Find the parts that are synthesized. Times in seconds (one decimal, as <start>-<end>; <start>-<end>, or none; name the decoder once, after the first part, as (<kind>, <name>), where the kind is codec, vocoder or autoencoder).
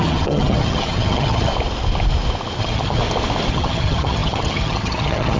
0.0-1.5 (vocoder, HiFi-GAN); 2.6-3.0; 3.5-5.4